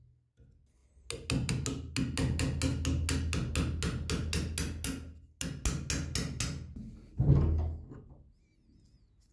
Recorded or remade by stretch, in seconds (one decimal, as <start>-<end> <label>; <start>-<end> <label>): 0.0-9.3 recorded